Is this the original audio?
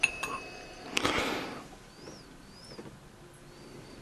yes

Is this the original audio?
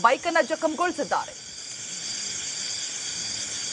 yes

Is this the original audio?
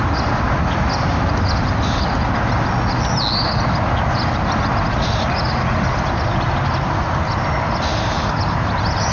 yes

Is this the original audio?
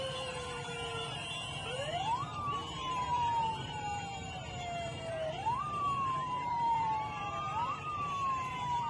no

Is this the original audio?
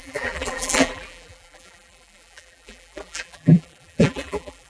no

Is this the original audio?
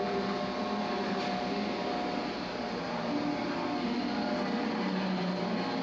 yes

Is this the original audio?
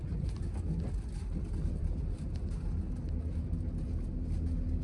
yes